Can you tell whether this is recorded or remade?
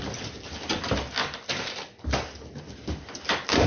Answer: recorded